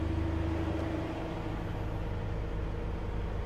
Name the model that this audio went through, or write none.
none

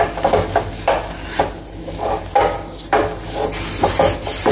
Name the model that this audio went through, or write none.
none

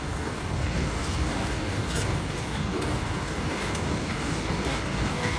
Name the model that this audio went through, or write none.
codec, DAC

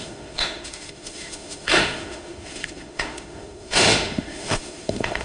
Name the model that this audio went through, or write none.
autoencoder, DAC-VAE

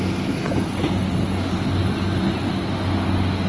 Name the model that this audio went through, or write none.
none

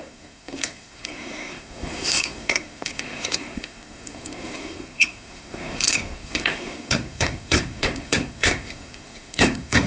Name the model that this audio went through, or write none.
codec, SNAC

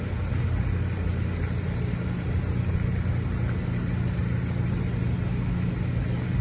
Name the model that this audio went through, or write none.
none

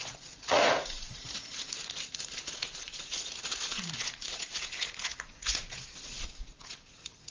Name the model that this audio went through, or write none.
vocoder, Vocos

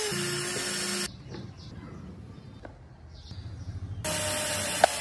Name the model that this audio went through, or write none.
none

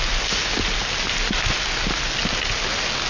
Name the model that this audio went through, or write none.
none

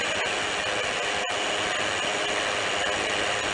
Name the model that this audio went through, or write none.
none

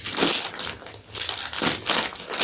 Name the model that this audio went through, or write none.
none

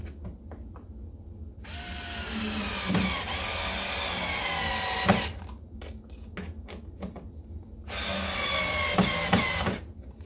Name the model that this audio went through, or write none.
none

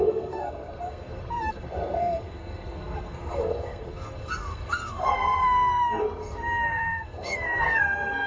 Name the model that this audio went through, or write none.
codec, SNAC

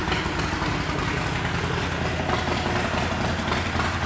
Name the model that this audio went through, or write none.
none